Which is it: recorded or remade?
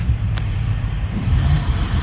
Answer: remade